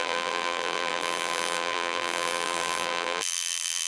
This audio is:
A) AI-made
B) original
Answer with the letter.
A